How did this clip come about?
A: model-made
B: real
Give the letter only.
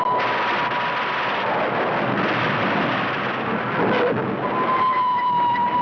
B